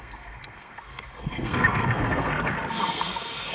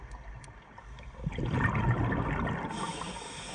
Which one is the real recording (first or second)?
second